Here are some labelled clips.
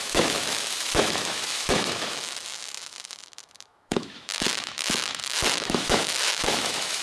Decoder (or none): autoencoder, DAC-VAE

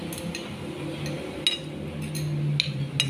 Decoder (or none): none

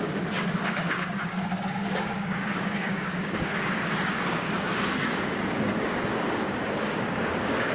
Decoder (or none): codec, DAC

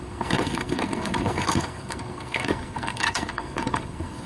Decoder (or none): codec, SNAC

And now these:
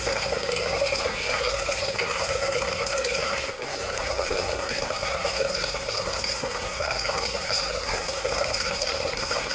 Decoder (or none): codec, SNAC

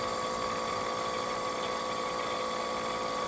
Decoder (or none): none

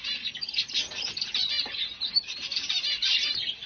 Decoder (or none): none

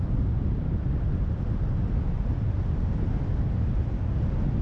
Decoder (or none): none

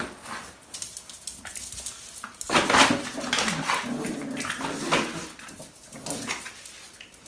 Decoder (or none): none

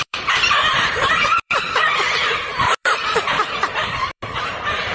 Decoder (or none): vocoder, BigVGAN v2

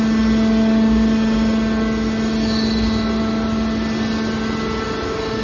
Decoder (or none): none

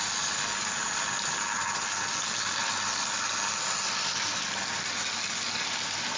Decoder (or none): none